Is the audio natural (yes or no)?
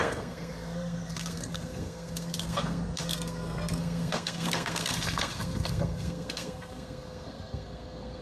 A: no